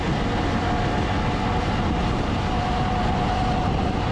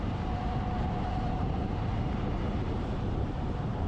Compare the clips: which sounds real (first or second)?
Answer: first